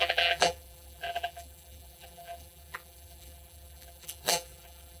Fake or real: fake